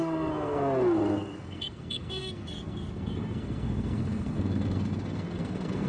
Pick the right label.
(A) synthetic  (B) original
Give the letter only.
A